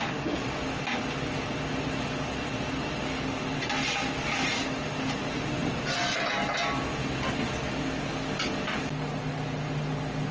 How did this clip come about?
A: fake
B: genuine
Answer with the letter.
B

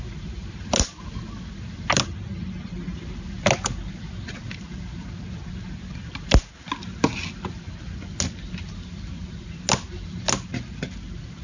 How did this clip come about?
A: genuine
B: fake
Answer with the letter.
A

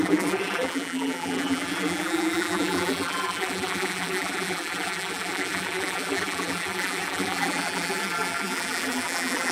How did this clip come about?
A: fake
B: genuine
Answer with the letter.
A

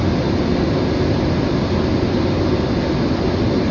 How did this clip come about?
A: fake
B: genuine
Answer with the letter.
B